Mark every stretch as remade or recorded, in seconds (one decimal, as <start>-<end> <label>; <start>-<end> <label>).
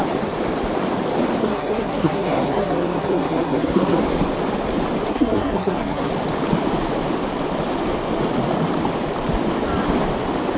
0.0-1.4 recorded; 1.4-4.0 remade; 4.0-5.1 recorded; 5.1-6.1 remade; 6.1-10.6 recorded